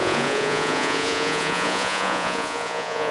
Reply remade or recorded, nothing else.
remade